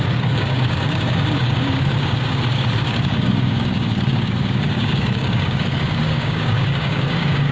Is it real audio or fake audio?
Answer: fake